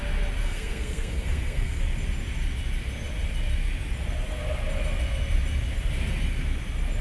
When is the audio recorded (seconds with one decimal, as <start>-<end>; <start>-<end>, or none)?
0.0-0.4; 1.8-7.0

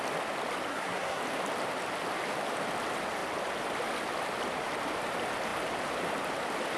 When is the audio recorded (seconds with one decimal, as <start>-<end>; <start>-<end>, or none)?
0.0-0.7; 1.2-6.8

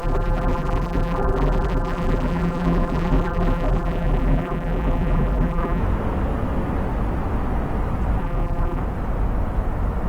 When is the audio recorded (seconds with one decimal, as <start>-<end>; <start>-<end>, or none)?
5.8-8.2; 8.8-10.1

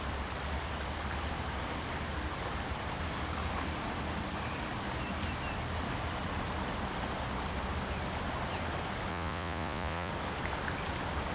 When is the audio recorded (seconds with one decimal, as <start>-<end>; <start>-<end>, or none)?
0.0-9.1; 10.1-11.3

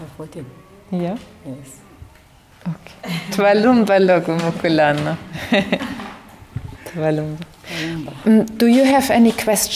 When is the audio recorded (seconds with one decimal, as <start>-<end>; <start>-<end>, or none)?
0.0-3.6; 4.5-9.7

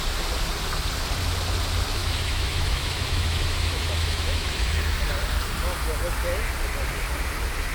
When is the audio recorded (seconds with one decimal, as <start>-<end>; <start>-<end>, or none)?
0.0-2.0; 5.0-7.7